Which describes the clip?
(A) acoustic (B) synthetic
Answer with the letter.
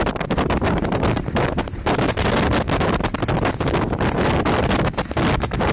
A